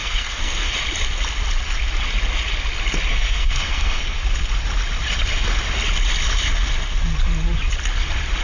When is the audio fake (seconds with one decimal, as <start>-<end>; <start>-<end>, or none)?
0.0-0.7; 3.1-4.2